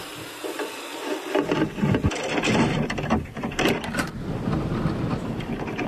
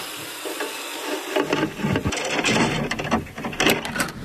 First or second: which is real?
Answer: second